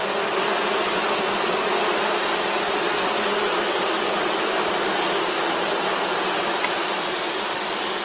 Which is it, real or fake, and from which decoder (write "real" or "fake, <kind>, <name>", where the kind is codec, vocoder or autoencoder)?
real